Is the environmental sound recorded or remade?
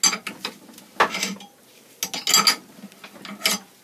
recorded